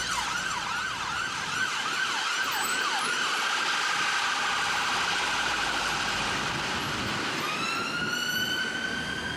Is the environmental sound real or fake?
real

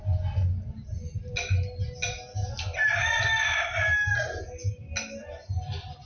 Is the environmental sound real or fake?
real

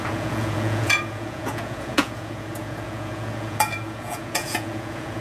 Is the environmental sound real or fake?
fake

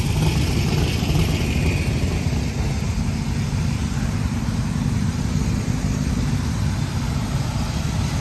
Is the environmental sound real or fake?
real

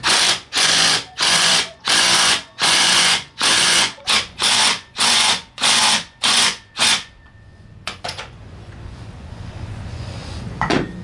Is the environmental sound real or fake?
fake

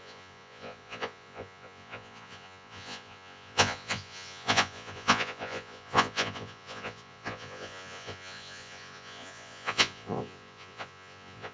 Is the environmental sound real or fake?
fake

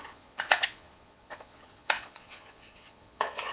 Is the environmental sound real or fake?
fake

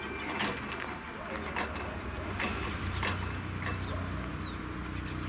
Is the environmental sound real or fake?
real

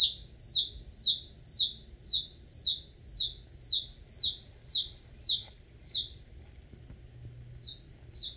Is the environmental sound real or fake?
real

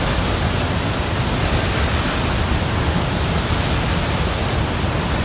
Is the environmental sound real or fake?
real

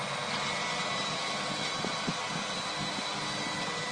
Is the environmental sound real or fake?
real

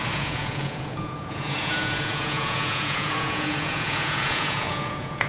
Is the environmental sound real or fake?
fake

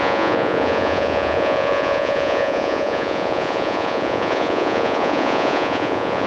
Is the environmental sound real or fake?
fake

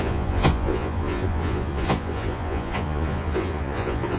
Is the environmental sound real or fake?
fake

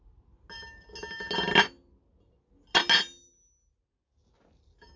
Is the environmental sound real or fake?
real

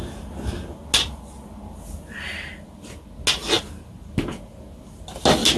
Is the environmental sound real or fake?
real